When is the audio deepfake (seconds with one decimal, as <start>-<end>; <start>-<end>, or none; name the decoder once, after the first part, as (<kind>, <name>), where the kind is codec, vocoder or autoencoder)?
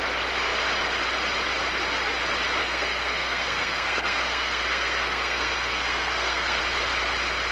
2.6-6.6 (codec, SNAC)